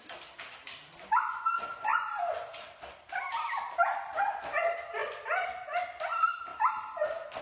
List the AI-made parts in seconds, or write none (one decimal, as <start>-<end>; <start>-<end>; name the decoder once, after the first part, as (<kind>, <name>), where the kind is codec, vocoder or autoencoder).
0.0-6.5 (vocoder, BigVGAN v2)